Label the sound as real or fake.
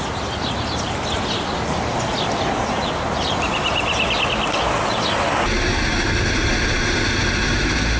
real